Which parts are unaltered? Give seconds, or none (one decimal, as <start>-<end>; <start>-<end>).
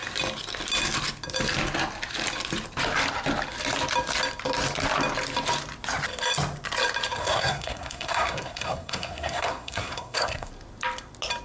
0.0-7.2; 10.5-11.4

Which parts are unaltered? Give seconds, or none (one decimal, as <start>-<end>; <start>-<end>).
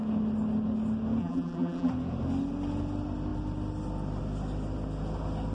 0.0-1.2; 1.9-5.5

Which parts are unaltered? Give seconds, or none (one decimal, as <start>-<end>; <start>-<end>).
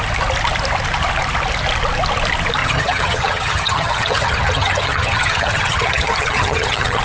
0.0-2.6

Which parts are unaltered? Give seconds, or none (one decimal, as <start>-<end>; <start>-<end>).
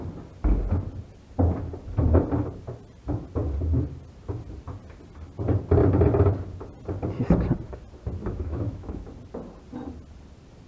0.0-8.2; 9.0-10.7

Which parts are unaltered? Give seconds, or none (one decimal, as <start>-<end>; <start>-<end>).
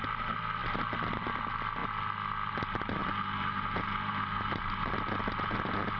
0.0-3.0; 4.9-6.0